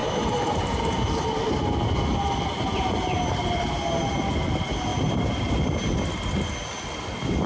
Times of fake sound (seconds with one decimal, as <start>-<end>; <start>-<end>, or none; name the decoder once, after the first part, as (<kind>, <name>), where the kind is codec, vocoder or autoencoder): 0.0-1.5 (vocoder, BigVGAN v2); 4.9-5.6